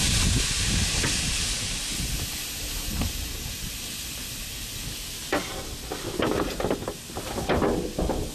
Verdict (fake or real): real